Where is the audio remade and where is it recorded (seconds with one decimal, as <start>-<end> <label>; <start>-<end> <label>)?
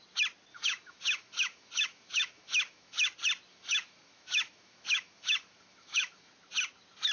0.0-0.5 recorded; 0.5-3.1 remade; 3.1-3.5 recorded; 3.5-6.3 remade; 6.3-7.1 recorded